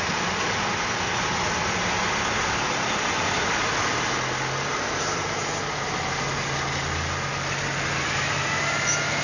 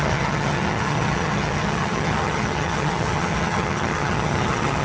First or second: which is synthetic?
second